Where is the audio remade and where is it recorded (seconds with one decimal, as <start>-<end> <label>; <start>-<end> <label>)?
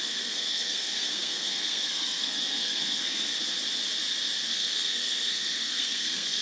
0.0-3.3 remade; 3.3-4.5 recorded; 4.5-6.4 remade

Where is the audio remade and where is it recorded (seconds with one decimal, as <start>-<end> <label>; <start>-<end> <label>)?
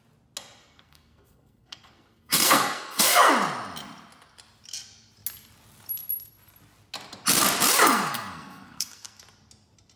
0.0-0.6 recorded; 0.6-3.3 remade; 3.3-7.8 recorded; 7.8-9.2 remade; 9.2-10.0 recorded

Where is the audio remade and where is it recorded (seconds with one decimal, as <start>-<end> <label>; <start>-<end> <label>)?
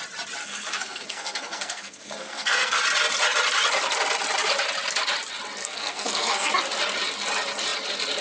0.0-0.4 recorded; 0.4-2.8 remade; 2.8-5.6 recorded; 5.6-6.5 remade; 6.5-8.2 recorded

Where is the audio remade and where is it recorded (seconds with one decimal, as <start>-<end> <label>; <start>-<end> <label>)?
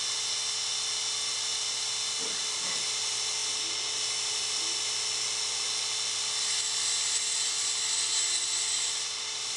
0.0-9.6 recorded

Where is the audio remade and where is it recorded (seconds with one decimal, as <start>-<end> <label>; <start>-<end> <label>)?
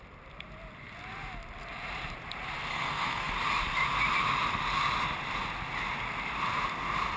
0.0-2.7 recorded; 2.7-3.3 remade; 3.3-7.2 recorded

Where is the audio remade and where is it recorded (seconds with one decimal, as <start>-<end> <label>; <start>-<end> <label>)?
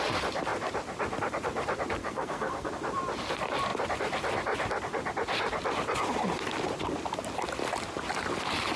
0.0-2.0 recorded; 2.0-2.7 remade; 2.7-8.8 recorded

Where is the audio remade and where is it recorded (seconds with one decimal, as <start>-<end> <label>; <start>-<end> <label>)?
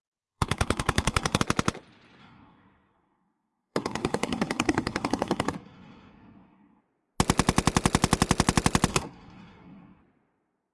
0.0-1.4 remade; 1.4-2.2 recorded; 2.2-6.8 remade; 6.8-8.9 recorded; 8.9-10.0 remade; 10.0-10.7 recorded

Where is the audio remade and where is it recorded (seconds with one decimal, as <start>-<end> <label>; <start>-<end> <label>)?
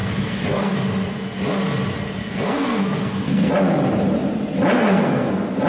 0.0-0.7 remade; 0.7-2.2 recorded; 2.2-3.5 remade; 3.5-4.8 recorded; 4.8-5.3 remade; 5.3-5.7 recorded